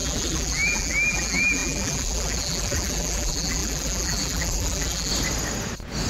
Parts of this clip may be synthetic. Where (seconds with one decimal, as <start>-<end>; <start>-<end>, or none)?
0.0-5.1